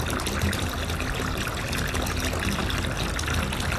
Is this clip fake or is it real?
real